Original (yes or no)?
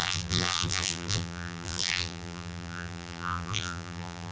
no